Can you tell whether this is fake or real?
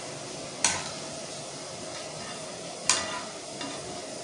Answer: real